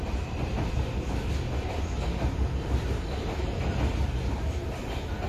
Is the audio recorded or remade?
recorded